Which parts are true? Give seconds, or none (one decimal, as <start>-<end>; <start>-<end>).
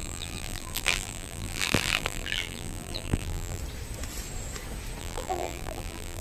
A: 3.6-5.0